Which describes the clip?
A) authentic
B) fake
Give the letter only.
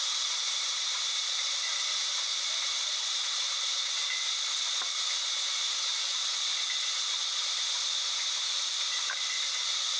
A